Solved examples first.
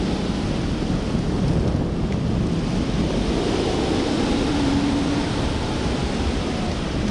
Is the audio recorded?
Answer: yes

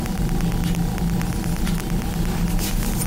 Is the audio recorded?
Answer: yes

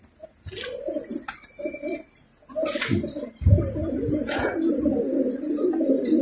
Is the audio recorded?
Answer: yes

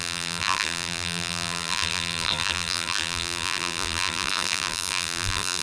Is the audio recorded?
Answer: no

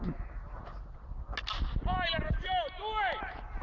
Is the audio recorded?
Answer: yes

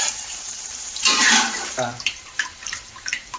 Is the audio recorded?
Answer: no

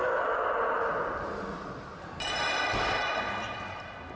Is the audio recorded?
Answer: yes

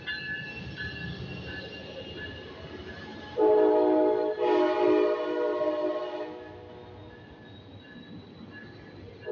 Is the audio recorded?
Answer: yes